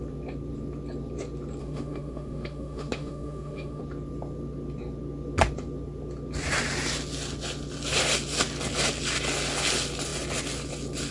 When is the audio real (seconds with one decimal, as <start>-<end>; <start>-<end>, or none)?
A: 0.0-1.6; 3.8-11.1